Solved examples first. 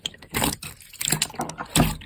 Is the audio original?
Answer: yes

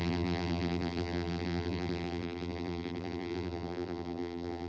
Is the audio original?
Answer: no